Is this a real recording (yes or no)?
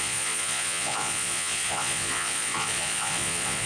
no